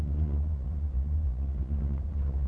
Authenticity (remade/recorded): remade